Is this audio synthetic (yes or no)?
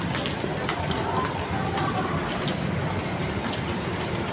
no